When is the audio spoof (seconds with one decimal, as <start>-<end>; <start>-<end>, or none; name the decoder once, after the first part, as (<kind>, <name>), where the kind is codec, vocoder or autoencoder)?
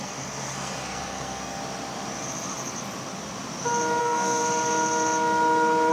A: 0.0-1.6 (codec, SNAC); 4.0-4.4